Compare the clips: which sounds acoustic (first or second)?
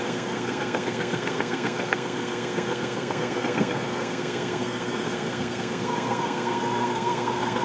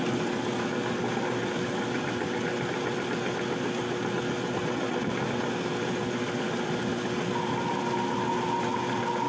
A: second